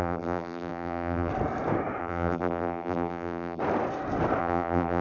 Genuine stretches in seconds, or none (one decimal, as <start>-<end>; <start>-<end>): 1.3-2.0; 3.6-4.4